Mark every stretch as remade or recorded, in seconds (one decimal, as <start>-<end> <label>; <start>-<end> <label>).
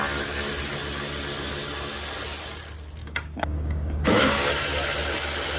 0.0-3.0 recorded; 3.0-4.5 remade; 4.5-5.6 recorded